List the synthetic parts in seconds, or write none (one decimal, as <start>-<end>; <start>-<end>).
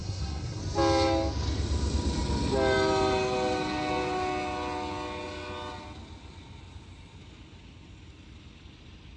0.0-0.6